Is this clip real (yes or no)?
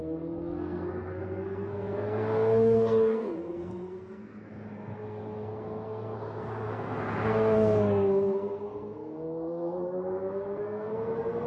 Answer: no